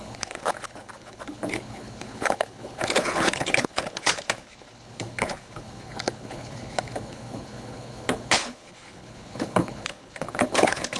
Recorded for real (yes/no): no